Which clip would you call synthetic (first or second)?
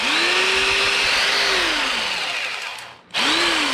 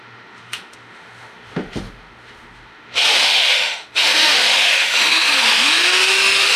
second